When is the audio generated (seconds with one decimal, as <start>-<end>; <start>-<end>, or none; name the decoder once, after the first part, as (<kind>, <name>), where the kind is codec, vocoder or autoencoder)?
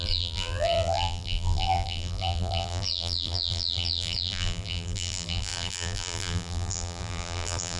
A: 0.0-7.8 (vocoder, BigVGAN v2)